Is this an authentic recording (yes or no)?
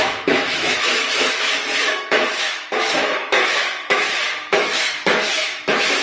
no